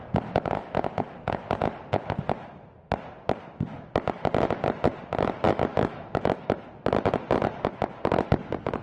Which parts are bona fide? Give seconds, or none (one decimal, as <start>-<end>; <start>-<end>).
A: 0.0-5.7; 6.6-8.8